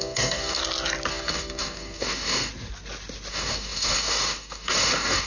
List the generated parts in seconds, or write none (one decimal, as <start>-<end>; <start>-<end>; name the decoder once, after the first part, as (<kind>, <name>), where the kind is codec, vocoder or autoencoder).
0.0-0.6 (codec, DAC); 1.1-2.5; 3.3-5.3

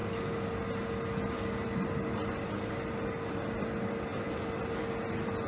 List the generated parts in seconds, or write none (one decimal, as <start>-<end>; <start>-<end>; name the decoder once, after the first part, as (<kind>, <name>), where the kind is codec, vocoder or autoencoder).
none

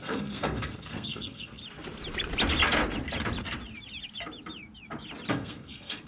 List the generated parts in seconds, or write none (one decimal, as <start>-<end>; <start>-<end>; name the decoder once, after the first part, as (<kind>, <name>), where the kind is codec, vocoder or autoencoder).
0.0-1.6 (codec, SNAC); 5.3-6.1

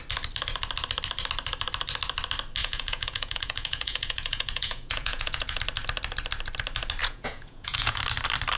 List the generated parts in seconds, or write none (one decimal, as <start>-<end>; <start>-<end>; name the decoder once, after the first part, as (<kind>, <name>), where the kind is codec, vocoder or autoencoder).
2.6-5.6 (vocoder, Vocos); 7.0-8.0